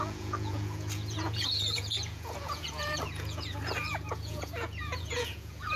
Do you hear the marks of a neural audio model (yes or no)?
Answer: yes